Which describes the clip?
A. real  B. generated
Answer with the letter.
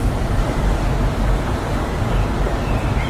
B